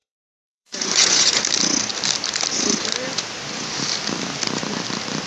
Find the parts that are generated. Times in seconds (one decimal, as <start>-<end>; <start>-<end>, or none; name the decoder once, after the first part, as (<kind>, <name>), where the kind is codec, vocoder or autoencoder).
0.0-1.4 (vocoder, Vocos)